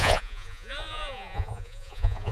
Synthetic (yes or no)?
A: yes